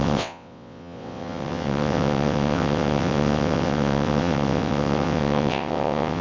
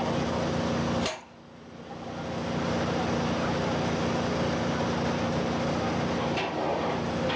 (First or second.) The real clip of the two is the second